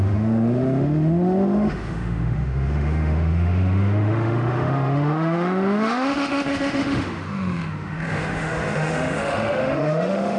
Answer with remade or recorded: remade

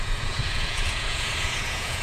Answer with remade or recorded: remade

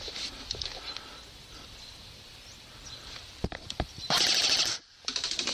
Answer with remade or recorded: remade